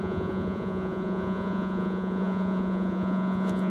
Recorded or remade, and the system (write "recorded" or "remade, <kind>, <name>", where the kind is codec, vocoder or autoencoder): remade, vocoder, Vocos